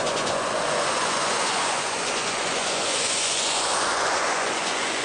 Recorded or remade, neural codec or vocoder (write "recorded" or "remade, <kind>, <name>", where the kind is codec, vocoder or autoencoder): remade, vocoder, Vocos